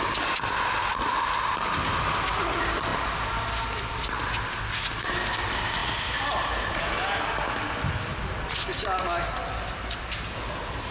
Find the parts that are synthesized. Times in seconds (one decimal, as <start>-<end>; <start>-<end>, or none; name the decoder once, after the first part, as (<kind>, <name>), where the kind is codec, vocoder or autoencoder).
none